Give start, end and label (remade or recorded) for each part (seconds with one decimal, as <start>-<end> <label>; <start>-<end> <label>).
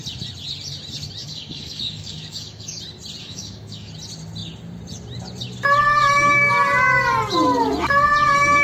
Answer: 0.0-1.2 recorded; 1.2-2.8 remade; 2.8-3.2 recorded; 3.2-3.9 remade; 3.9-8.6 recorded